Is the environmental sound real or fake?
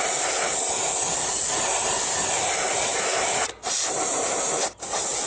real